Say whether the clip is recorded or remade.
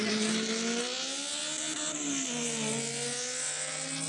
recorded